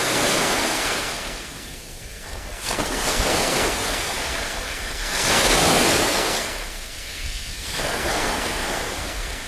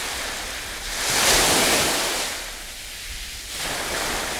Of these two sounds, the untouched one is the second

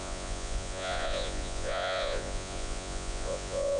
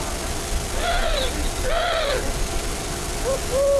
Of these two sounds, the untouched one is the second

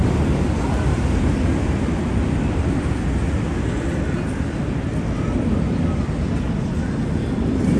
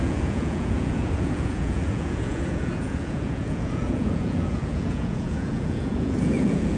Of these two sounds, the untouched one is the first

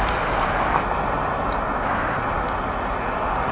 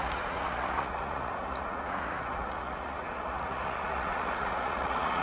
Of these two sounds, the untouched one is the first